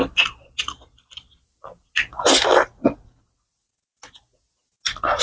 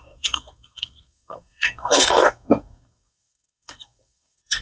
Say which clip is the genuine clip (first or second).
first